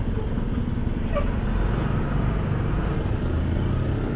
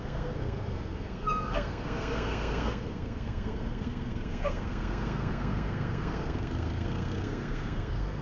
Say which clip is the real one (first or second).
first